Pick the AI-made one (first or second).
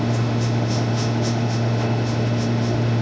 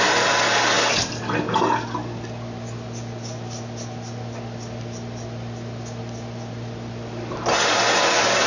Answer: first